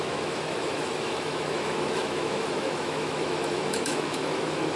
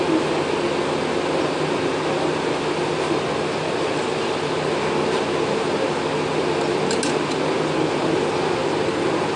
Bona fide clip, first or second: second